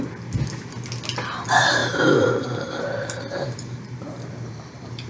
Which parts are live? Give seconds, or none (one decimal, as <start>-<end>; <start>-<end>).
0.0-1.8